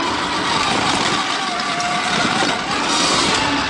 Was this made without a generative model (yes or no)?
yes